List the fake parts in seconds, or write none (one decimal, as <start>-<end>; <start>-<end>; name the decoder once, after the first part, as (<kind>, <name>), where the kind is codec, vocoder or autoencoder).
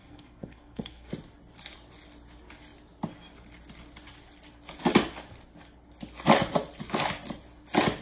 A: 0.0-1.1 (codec, SNAC)